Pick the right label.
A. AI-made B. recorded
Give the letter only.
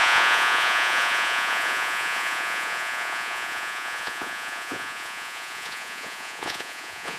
A